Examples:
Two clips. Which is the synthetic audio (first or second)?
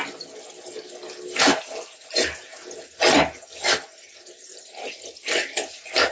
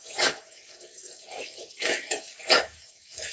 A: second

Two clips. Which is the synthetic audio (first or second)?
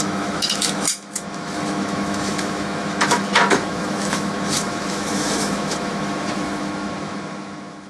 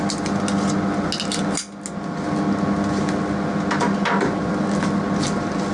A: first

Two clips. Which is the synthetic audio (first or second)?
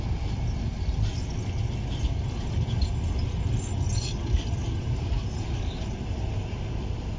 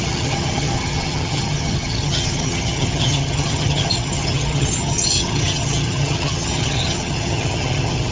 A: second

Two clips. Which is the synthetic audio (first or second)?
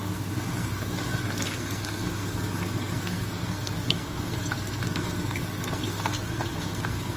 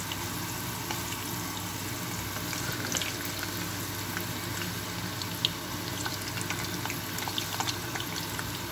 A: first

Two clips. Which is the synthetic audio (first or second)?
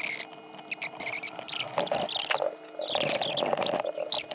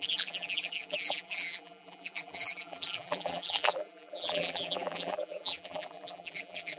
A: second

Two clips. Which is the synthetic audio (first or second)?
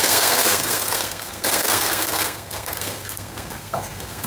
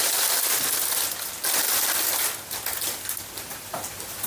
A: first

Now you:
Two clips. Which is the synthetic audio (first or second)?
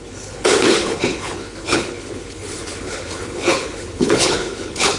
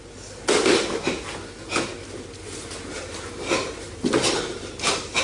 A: first